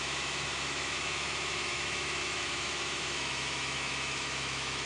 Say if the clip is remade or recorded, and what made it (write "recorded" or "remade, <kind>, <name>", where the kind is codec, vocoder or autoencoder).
remade, autoencoder, DAC-VAE